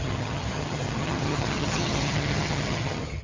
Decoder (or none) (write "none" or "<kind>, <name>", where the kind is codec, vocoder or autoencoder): vocoder, HiFi-GAN